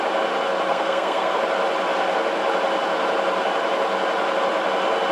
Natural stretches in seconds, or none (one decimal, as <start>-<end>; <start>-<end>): 0.0-0.7; 1.4-5.1